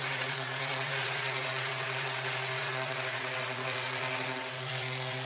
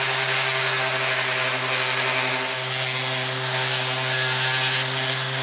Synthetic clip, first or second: first